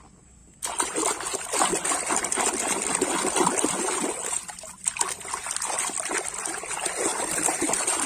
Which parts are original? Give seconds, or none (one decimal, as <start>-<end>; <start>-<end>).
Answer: 0.0-7.1